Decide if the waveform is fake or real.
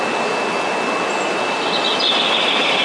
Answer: real